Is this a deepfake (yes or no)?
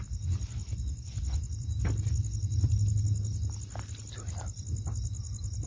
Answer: no